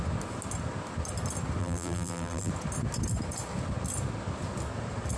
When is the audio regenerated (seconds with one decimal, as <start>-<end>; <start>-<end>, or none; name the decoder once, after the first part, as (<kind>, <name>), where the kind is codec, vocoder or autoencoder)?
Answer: 1.6-2.5 (vocoder, BigVGAN v2)